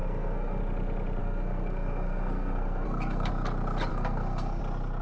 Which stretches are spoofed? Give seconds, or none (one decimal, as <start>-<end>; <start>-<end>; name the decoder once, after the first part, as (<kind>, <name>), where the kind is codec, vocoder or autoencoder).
0.0-0.6 (codec, SNAC); 1.2-3.3; 3.9-4.6